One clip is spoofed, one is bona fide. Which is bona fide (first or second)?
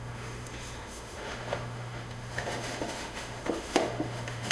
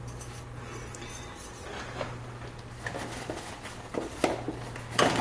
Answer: second